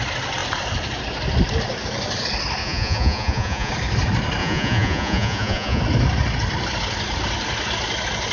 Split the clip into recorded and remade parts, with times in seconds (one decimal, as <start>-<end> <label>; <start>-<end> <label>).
0.0-2.6 recorded; 2.6-3.7 remade; 3.7-4.4 recorded; 4.4-5.8 remade; 5.8-8.3 recorded